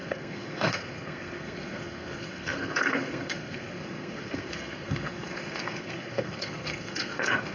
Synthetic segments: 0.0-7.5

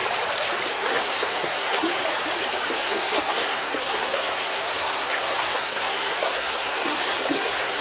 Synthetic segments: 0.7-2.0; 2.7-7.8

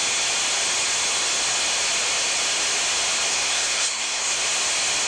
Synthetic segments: 3.3-4.4

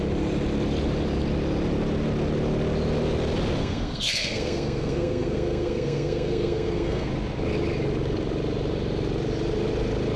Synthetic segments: 3.6-7.1

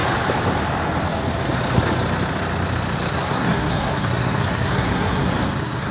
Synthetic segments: 3.1-5.9